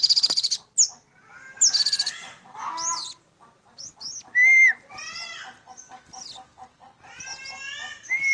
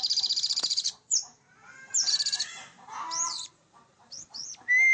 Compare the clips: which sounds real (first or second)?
first